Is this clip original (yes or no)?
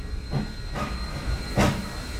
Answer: yes